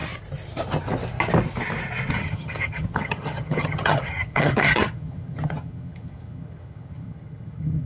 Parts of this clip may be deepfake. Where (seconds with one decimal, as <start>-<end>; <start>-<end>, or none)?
2.1-7.9